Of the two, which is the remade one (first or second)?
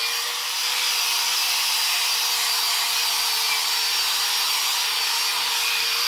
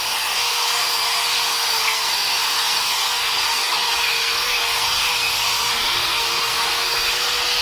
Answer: second